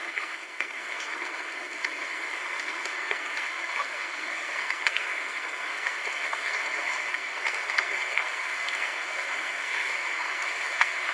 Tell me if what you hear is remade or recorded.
remade